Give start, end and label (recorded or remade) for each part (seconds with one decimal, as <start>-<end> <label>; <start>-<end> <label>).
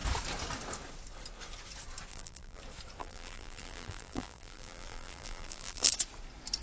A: 0.0-2.1 recorded; 2.1-2.6 remade; 2.6-3.0 recorded; 3.0-5.9 remade; 5.9-6.6 recorded